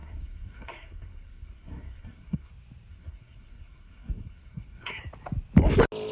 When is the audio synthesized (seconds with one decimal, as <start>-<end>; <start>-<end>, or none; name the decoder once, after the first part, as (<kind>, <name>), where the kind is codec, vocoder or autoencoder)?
0.0-2.5 (codec, SNAC); 2.9-5.0